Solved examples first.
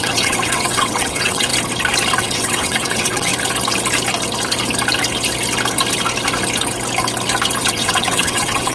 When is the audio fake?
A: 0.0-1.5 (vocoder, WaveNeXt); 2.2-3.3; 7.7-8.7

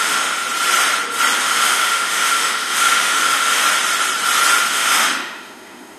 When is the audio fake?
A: 0.0-0.4 (autoencoder, DAC-VAE); 1.4-3.6; 4.7-6.0

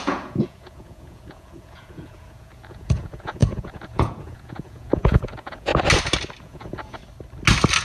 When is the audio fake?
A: 0.0-5.7 (vocoder, Vocos); 6.4-7.0

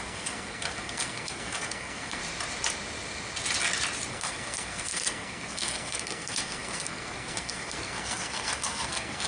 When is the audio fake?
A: 0.0-2.2 (codec, SNAC); 4.1-9.3

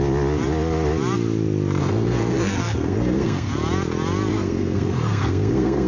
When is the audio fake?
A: 1.8-3.5 (codec, SNAC); 4.3-5.9